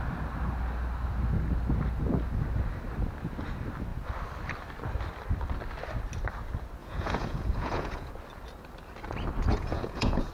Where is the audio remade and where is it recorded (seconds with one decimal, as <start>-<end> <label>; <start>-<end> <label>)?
0.0-6.8 recorded; 6.8-8.1 remade; 8.1-9.5 recorded; 9.5-10.3 remade